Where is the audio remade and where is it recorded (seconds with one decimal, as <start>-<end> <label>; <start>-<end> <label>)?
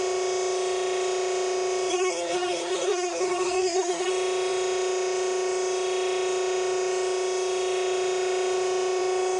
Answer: 0.0-1.9 recorded; 1.9-4.1 remade; 4.1-9.4 recorded